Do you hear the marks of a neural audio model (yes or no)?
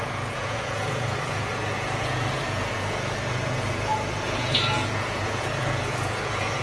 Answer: yes